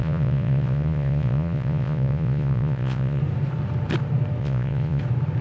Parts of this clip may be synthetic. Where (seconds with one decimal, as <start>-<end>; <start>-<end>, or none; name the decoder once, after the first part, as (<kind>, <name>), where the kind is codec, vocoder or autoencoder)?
0.0-3.2 (vocoder, Vocos); 4.4-5.0